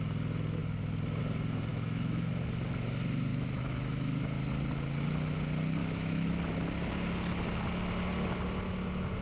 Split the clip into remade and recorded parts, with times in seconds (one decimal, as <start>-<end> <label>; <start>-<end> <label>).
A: 0.0-1.7 recorded; 1.7-2.3 remade; 2.3-3.3 recorded; 3.3-4.2 remade; 4.2-5.8 recorded; 5.8-6.3 remade; 6.3-9.2 recorded